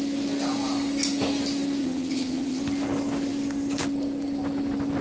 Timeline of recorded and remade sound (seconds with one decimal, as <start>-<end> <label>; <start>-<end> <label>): 0.0-1.8 recorded; 1.8-2.6 remade; 2.6-5.0 recorded